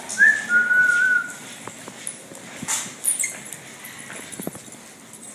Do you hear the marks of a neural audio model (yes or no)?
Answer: no